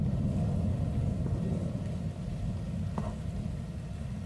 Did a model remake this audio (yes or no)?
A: no